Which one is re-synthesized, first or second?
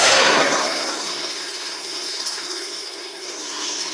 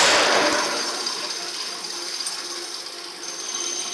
first